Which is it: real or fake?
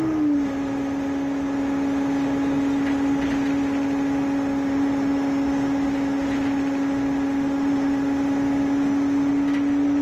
real